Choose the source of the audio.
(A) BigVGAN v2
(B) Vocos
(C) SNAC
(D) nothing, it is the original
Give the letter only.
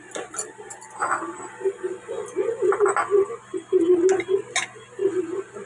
D